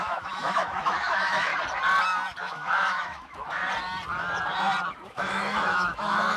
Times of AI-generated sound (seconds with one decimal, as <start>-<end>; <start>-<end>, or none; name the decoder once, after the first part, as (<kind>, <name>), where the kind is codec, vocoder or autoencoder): 0.0-1.5 (autoencoder, DAC-VAE); 2.4-3.6; 4.9-6.4